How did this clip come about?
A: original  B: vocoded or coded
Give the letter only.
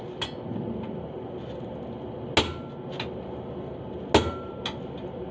A